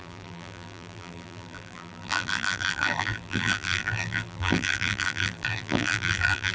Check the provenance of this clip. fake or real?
fake